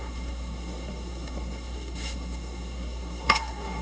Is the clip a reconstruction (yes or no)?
yes